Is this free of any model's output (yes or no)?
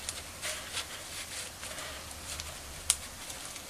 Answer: yes